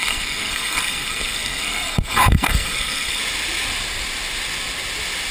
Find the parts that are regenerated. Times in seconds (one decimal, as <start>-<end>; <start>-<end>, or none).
0.0-3.2